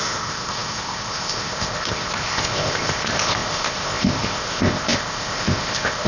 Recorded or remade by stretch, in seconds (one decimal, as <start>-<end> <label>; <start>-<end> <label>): 0.0-6.1 remade